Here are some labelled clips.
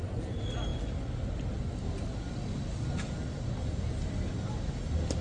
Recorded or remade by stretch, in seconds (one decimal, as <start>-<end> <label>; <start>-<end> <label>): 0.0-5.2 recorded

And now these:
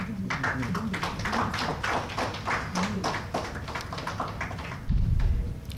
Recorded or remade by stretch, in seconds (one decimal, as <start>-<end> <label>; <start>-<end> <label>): 0.0-5.8 recorded

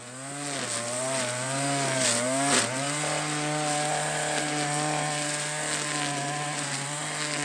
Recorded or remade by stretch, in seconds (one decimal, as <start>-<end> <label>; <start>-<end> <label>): 0.0-7.4 recorded

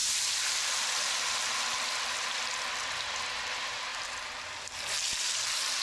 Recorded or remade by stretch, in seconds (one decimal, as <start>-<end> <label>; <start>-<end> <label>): 0.0-3.3 remade; 3.3-5.8 recorded